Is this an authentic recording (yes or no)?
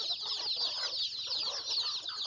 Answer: yes